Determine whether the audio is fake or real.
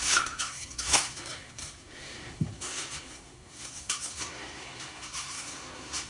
fake